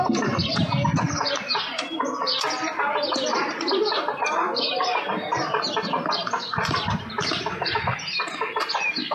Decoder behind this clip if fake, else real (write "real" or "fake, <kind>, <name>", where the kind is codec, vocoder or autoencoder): fake, vocoder, BigVGAN v2